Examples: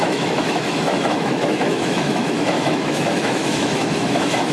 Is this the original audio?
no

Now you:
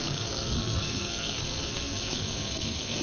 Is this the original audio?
no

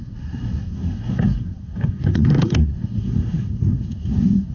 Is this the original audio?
no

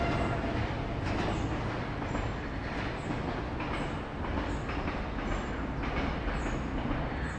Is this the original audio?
yes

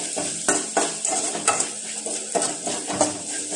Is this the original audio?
yes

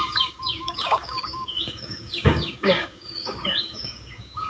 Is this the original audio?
no